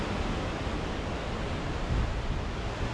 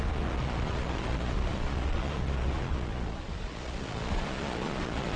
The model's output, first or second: second